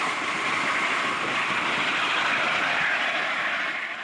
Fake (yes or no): yes